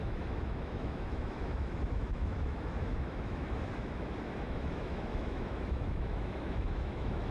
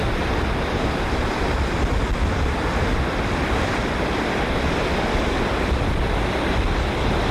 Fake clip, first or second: first